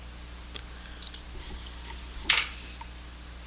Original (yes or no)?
yes